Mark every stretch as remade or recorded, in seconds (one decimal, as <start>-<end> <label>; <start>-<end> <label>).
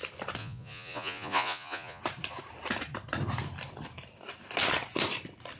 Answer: 0.0-0.4 recorded; 0.4-2.0 remade; 2.0-5.6 recorded